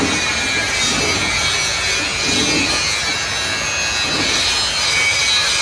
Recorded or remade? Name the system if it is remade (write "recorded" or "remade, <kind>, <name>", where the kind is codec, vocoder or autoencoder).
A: recorded